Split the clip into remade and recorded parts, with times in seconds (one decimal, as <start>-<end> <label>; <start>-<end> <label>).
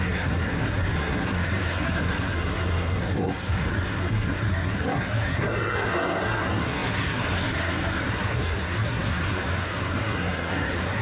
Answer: 0.0-11.0 remade